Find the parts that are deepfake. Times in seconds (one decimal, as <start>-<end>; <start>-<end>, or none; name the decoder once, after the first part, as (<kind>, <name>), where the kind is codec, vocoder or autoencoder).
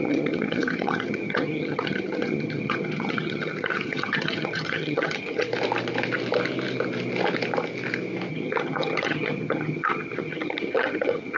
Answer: 0.0-5.5 (vocoder, HiFi-GAN); 8.3-11.4